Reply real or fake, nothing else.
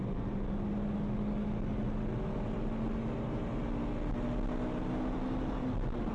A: real